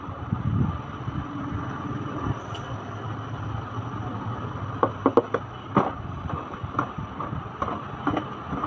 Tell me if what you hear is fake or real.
real